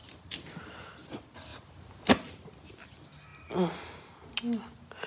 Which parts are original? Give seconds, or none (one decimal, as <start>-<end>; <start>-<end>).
0.0-5.1